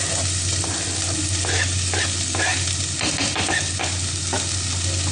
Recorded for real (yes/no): yes